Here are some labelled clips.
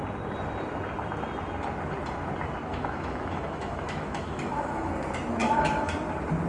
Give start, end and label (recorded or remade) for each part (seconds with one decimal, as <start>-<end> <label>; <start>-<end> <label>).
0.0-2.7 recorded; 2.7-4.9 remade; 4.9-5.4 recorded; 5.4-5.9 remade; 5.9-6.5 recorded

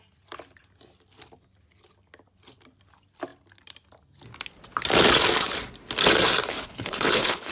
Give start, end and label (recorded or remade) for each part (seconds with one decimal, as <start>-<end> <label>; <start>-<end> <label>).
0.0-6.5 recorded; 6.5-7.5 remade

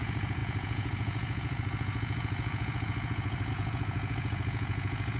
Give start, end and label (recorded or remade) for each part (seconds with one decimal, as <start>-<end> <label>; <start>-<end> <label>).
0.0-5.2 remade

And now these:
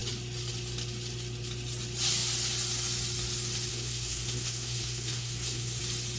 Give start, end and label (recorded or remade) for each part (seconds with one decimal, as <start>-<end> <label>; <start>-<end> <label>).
0.0-3.7 recorded; 3.7-5.8 remade; 5.8-6.2 recorded

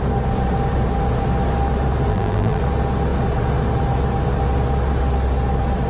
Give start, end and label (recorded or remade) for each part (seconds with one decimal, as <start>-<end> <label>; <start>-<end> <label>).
0.0-2.1 recorded; 2.1-2.6 remade; 2.6-5.9 recorded